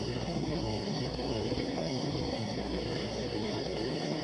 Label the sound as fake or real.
fake